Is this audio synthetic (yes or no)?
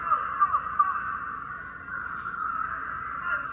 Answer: no